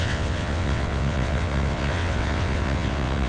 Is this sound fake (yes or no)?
yes